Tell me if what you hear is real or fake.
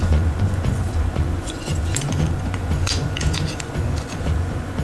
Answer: fake